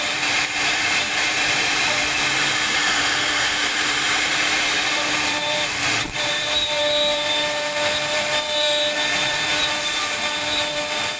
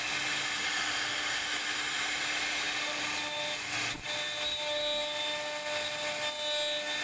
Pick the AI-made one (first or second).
first